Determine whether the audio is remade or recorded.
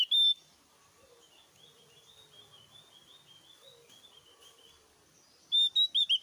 recorded